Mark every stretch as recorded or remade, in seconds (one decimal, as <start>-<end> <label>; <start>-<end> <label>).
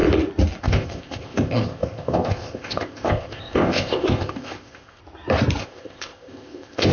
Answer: 0.0-0.6 recorded; 0.6-5.0 remade; 5.0-5.6 recorded; 5.6-6.9 remade